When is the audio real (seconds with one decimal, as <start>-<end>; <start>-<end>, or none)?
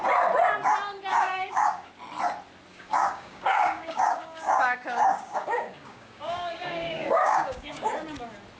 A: 0.0-1.1; 1.9-2.7; 7.9-8.6